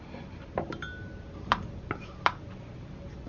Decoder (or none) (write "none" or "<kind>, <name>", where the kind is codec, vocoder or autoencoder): vocoder, BigVGAN v2